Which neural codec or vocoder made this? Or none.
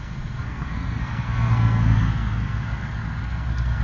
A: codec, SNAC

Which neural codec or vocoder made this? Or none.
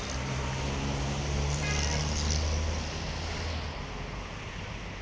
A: none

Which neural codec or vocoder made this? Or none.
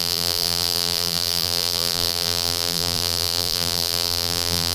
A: vocoder, BigVGAN v2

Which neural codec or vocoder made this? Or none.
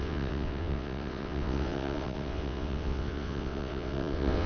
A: vocoder, WaveNeXt